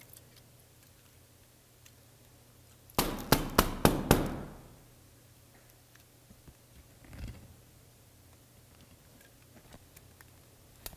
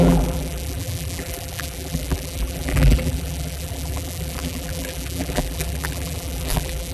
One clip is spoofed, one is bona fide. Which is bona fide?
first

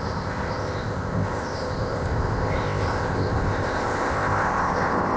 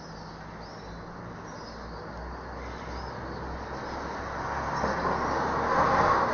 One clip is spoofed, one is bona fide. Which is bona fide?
second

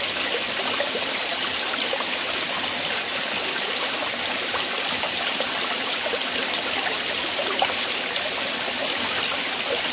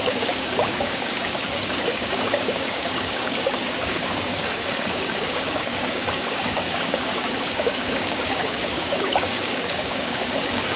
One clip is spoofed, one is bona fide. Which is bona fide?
first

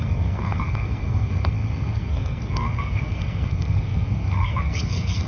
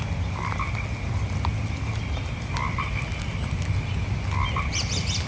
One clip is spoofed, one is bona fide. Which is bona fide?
second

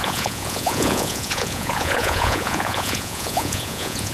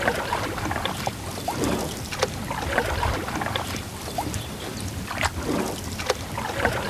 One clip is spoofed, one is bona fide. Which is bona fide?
second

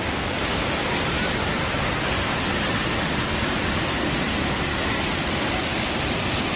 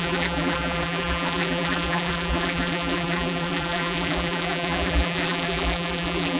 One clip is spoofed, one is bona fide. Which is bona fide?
first